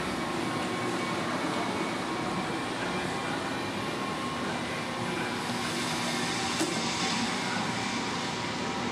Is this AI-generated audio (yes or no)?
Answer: no